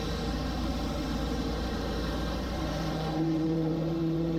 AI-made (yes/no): yes